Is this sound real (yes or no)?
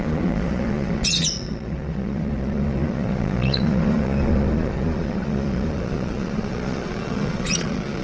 no